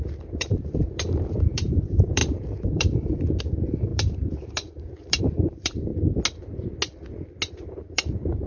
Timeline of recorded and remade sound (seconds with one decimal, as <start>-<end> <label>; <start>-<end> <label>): 0.0-5.9 remade; 5.9-7.5 recorded; 7.5-8.5 remade